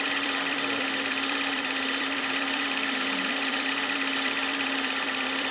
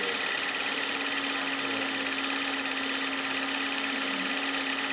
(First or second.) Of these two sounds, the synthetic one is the first